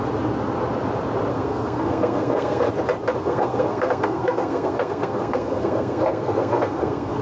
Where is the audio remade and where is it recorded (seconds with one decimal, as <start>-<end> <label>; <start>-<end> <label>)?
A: 0.0-1.3 recorded; 1.3-2.7 remade; 2.7-3.2 recorded; 3.2-7.2 remade